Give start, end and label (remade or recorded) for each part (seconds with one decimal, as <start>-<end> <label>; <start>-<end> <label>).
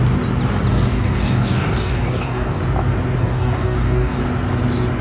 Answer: 0.0-0.7 recorded; 0.7-2.6 remade; 2.6-3.2 recorded; 3.2-4.2 remade; 4.2-5.0 recorded